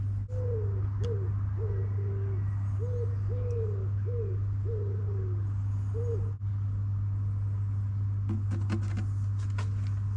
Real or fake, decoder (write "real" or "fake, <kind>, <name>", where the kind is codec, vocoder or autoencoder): real